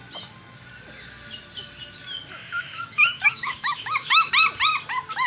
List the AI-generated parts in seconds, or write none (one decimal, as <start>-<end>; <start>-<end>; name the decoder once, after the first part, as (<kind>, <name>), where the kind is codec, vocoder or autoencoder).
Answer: 2.4-4.3 (autoencoder, DAC-VAE)